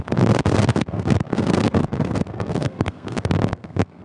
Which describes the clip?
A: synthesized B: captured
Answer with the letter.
A